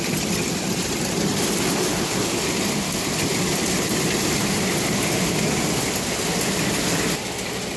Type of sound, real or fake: real